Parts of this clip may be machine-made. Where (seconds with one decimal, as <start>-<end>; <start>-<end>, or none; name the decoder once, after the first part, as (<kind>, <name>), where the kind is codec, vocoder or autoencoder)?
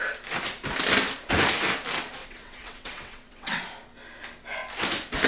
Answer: 2.2-3.6 (vocoder, WaveNeXt)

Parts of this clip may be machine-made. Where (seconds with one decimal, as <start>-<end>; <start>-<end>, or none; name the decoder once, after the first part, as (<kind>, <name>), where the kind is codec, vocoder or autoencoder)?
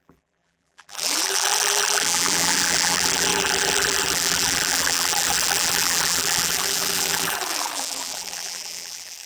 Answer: 0.0-9.3 (vocoder, BigVGAN v2)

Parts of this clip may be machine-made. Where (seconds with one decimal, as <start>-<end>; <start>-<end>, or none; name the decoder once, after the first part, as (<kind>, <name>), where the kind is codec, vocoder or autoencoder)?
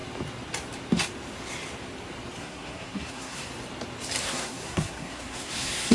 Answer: 2.4-3.5 (codec, SNAC); 4.2-5.9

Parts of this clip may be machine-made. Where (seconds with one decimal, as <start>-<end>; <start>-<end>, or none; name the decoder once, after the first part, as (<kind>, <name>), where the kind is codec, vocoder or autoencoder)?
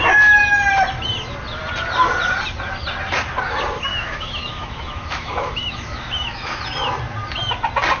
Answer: 3.9-6.6 (autoencoder, DAC-VAE)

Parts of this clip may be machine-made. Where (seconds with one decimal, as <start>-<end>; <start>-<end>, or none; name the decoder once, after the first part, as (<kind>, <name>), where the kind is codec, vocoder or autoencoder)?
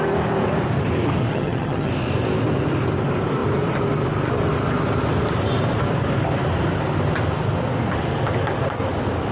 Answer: 1.3-1.9 (vocoder, HiFi-GAN)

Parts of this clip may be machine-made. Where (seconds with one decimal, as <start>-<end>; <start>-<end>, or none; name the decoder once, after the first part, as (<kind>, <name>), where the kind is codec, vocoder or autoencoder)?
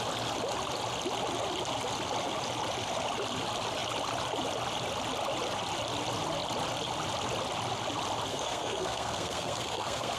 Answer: 8.3-10.2 (codec, SNAC)